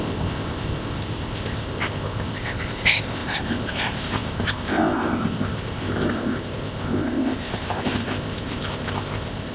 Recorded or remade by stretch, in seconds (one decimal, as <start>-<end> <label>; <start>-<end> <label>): 0.0-9.5 remade